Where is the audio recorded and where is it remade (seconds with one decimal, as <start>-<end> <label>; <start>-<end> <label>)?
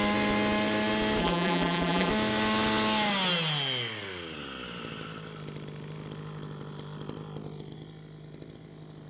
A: 0.0-1.2 recorded; 1.2-2.1 remade; 2.1-9.1 recorded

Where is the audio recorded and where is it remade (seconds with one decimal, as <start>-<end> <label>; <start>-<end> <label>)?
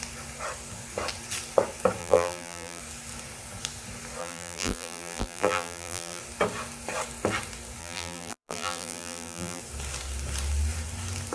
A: 0.0-2.0 recorded; 2.0-2.8 remade; 2.8-4.2 recorded; 4.2-6.2 remade; 6.2-7.8 recorded; 7.8-9.6 remade; 9.6-11.3 recorded